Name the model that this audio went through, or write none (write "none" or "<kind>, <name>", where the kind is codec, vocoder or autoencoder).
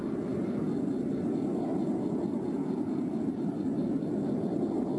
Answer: none